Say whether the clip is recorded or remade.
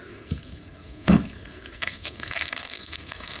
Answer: remade